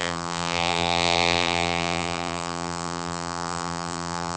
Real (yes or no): no